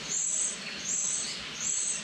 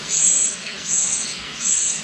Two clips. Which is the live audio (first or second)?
first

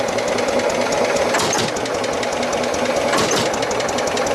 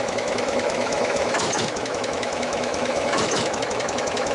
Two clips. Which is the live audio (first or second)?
first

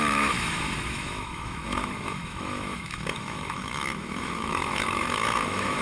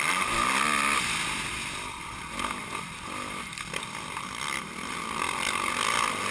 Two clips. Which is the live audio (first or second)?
second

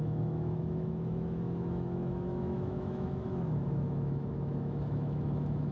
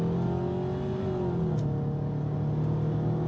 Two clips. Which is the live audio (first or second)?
second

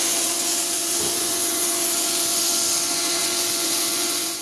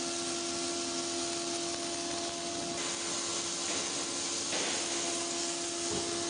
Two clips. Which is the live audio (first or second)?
second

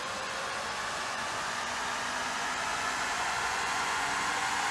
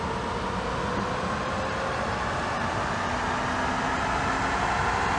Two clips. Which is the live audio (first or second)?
second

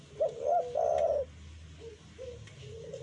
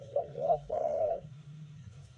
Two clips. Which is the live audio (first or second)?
first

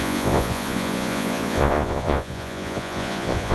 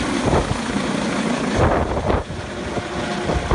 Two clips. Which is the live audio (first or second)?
second